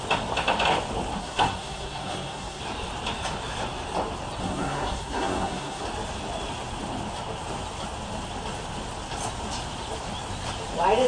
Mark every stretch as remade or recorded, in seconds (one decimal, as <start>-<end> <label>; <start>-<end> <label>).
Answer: 0.0-1.2 recorded; 1.2-2.6 remade; 2.6-4.4 recorded; 4.4-5.8 remade; 5.8-11.1 recorded